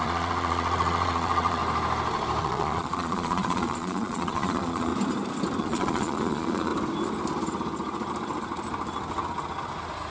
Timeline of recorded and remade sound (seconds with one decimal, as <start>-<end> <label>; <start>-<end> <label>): 0.0-1.6 remade; 1.6-2.4 recorded; 2.4-4.9 remade; 4.9-5.6 recorded; 5.6-6.7 remade; 6.7-10.1 recorded